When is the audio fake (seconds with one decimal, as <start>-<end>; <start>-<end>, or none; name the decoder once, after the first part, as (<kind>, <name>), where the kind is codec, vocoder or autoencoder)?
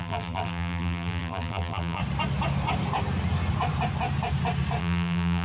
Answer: 0.0-2.0 (vocoder, BigVGAN v2); 4.8-5.4